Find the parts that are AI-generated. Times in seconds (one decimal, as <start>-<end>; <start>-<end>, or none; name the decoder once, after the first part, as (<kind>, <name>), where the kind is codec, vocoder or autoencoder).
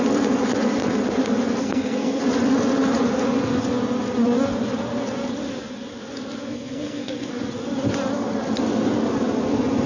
1.6-2.2 (codec, SNAC); 6.5-7.3